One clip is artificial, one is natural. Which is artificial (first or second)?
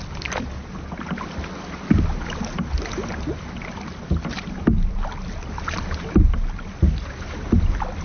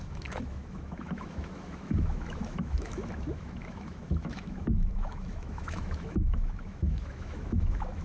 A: second